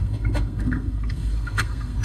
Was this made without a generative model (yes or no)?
no